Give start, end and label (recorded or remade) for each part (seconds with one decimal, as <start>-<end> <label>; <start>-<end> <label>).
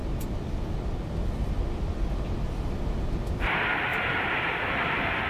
0.0-5.3 recorded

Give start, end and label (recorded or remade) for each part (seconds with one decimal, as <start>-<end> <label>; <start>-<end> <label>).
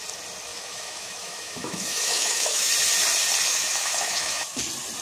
0.0-0.5 recorded; 0.5-2.7 remade; 2.7-3.5 recorded; 3.5-4.6 remade; 4.6-5.0 recorded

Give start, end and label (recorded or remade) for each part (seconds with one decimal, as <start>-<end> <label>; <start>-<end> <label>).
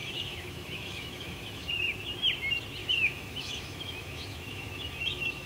0.0-1.7 remade; 1.7-2.8 recorded; 2.8-5.5 remade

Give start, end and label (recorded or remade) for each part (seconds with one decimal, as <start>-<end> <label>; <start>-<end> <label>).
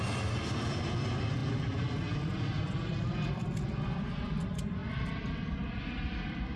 0.0-6.6 recorded